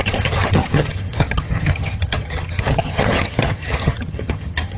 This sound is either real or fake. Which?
fake